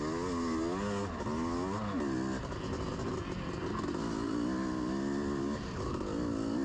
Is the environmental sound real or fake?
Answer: real